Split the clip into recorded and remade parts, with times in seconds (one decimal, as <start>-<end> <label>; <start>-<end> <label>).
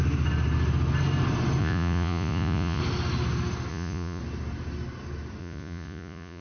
0.0-1.6 recorded; 1.6-2.8 remade; 2.8-3.7 recorded; 3.7-4.2 remade; 4.2-5.4 recorded; 5.4-6.4 remade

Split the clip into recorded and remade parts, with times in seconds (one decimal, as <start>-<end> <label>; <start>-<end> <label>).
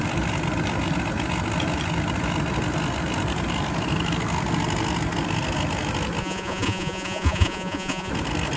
0.0-6.2 recorded; 6.2-8.1 remade; 8.1-8.6 recorded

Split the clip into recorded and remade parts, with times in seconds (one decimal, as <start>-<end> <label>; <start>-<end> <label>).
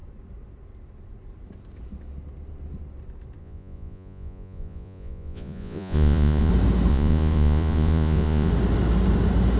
0.0-3.4 recorded; 3.4-6.5 remade; 6.5-6.9 recorded; 6.9-8.5 remade; 8.5-9.6 recorded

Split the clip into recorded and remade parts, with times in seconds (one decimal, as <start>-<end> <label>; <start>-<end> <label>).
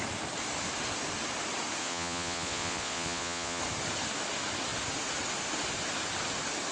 0.0-1.8 recorded; 1.8-3.6 remade; 3.6-6.7 recorded